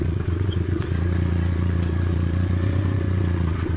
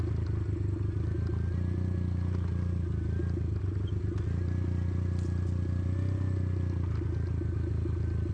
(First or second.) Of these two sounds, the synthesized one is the first